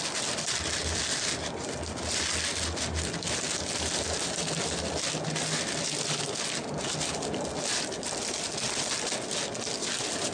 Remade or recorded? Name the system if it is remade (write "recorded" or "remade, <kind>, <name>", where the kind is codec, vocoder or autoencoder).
recorded